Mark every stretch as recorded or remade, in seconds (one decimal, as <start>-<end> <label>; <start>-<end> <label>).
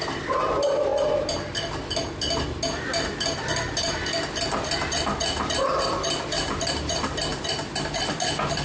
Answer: 0.0-0.9 remade; 0.9-4.9 recorded; 4.9-7.3 remade; 7.3-8.1 recorded; 8.1-8.6 remade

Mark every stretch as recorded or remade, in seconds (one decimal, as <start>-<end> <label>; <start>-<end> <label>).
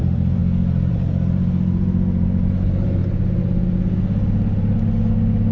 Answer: 0.0-0.4 remade; 0.4-0.9 recorded; 0.9-3.0 remade; 3.0-5.5 recorded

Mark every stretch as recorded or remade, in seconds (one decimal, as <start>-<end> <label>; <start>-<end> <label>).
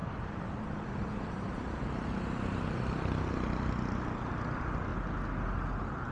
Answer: 0.0-3.7 remade; 3.7-6.1 recorded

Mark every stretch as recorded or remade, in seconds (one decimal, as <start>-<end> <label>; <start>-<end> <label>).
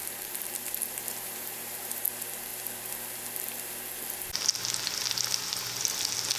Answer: 0.0-2.0 remade; 2.0-6.4 recorded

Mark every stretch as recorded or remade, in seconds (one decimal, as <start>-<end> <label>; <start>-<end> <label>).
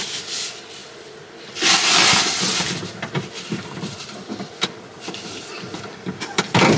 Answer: 0.0-0.8 recorded; 0.8-1.7 remade; 1.7-2.5 recorded; 2.5-6.8 remade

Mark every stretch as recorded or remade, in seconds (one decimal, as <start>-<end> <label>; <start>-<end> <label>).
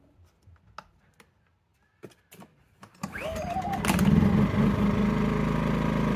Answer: 0.0-6.2 recorded